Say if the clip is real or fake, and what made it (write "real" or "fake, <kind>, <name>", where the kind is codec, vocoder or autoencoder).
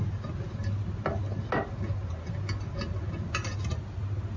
real